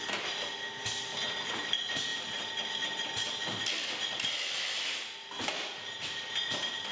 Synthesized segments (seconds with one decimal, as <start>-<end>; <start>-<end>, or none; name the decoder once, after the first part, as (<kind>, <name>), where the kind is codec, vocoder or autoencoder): 1.1-1.6 (vocoder, BigVGAN v2)

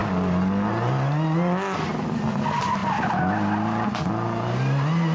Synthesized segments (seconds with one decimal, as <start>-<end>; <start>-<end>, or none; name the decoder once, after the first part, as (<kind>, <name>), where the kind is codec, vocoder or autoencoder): none

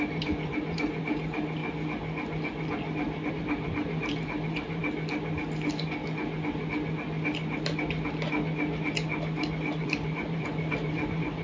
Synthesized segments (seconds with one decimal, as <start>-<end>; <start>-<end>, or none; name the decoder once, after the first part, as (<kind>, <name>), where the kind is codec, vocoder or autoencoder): 0.0-1.6 (vocoder, BigVGAN v2); 3.3-4.8; 9.8-11.4

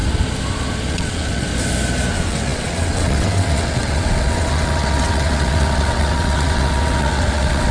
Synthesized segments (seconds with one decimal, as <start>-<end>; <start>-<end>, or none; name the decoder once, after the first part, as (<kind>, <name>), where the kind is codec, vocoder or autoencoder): 0.9-1.5 (vocoder, WaveNeXt); 2.1-7.7

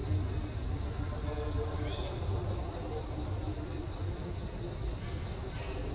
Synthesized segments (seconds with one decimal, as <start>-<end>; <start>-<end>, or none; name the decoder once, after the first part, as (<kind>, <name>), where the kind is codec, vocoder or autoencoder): none